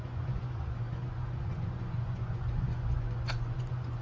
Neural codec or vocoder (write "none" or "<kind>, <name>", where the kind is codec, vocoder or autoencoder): vocoder, Vocos